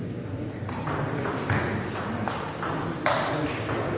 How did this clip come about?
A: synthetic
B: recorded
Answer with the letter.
B